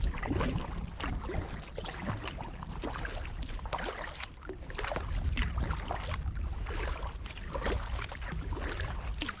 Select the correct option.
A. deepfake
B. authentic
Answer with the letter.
B